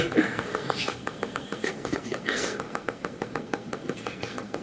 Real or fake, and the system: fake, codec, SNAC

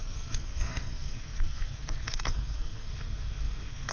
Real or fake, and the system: fake, codec, SNAC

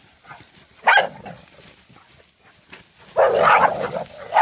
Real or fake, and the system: real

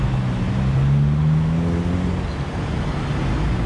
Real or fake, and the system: real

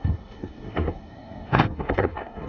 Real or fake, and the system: fake, codec, SNAC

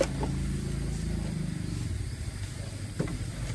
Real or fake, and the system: real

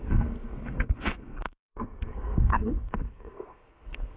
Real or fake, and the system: fake, codec, SNAC